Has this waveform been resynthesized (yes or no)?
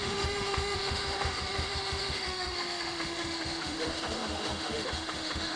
yes